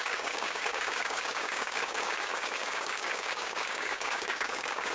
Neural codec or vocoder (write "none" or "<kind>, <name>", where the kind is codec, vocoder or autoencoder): codec, DAC